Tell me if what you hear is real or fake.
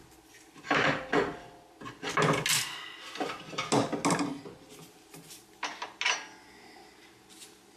real